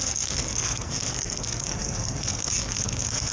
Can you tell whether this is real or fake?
fake